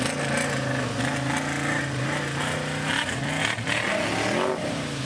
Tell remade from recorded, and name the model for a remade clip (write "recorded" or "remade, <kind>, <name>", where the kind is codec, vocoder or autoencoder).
recorded